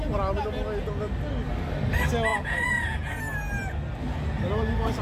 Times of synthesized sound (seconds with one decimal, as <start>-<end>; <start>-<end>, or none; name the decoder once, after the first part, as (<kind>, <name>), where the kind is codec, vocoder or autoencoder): 2.3-3.2 (vocoder, Vocos)